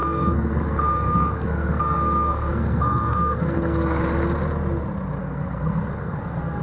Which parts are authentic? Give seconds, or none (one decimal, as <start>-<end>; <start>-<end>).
4.0-5.2